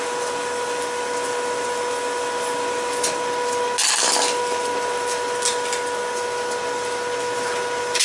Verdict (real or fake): real